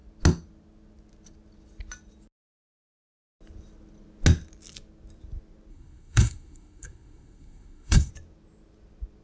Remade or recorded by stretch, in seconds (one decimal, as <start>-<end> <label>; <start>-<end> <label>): 0.0-5.7 recorded; 5.7-8.1 remade; 8.1-9.2 recorded